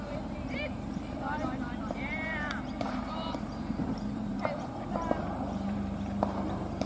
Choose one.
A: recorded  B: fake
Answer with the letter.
B